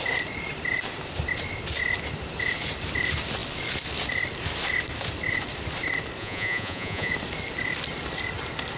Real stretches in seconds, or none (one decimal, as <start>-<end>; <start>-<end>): 0.0-6.2; 7.1-8.8